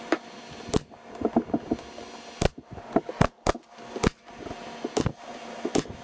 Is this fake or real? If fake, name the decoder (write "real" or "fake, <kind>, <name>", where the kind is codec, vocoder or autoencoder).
real